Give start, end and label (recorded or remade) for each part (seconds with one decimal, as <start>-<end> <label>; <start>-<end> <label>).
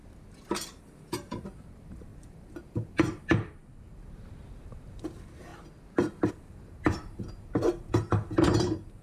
0.0-0.8 recorded; 0.8-5.5 remade; 5.5-6.3 recorded; 6.3-9.0 remade